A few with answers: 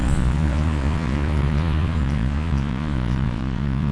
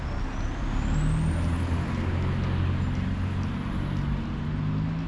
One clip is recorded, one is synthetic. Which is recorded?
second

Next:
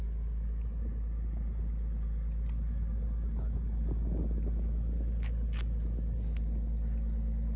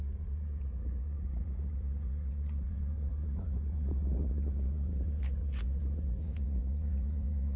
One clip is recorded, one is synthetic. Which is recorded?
first